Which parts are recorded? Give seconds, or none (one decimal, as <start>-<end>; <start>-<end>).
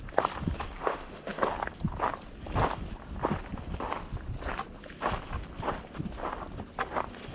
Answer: 0.0-0.8; 1.4-7.3